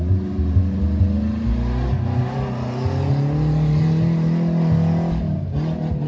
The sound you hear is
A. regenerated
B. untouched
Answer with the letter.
B